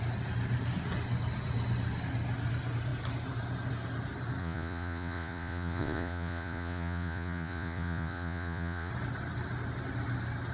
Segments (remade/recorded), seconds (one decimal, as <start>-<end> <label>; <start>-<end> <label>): 0.0-4.4 recorded; 4.4-8.9 remade; 8.9-10.5 recorded